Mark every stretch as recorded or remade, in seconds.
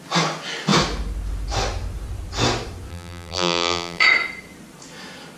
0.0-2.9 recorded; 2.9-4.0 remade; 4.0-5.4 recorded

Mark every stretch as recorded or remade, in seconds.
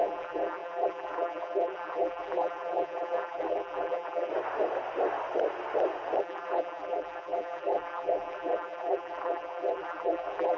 0.0-4.3 remade; 4.3-6.2 recorded; 6.2-10.6 remade